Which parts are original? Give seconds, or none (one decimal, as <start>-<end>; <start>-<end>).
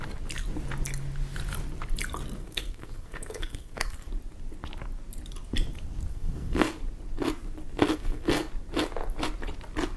0.0-2.4; 4.1-6.1; 6.8-7.9; 8.5-10.0